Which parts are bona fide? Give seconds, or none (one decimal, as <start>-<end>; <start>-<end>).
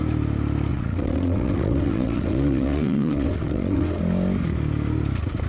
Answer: 0.0-0.7; 4.0-5.5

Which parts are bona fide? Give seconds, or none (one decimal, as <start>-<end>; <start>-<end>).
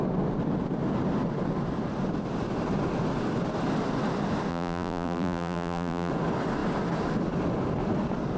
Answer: 0.0-4.5; 6.1-8.4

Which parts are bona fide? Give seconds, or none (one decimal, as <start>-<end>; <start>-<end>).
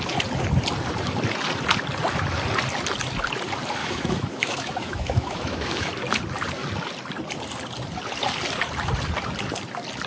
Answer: 0.0-3.8; 5.9-10.1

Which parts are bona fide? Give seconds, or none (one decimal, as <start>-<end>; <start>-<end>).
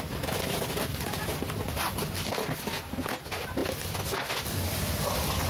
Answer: 0.0-5.5